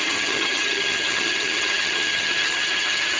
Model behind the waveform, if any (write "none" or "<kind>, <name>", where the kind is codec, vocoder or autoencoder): vocoder, HiFi-GAN